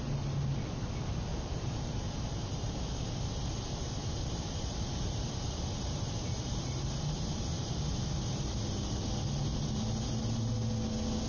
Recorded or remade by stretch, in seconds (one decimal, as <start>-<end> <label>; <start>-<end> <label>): 0.0-1.3 recorded; 1.3-2.9 remade; 2.9-4.0 recorded; 4.0-8.6 remade; 8.6-11.3 recorded